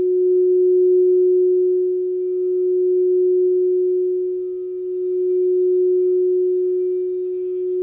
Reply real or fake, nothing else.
real